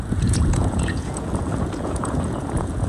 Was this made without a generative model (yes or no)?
no